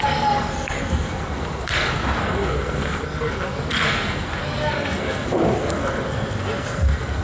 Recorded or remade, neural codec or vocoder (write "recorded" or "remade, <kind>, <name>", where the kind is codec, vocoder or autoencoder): remade, codec, SNAC